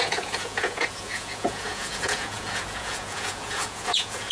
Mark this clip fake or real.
fake